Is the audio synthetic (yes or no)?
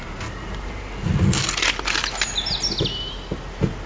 no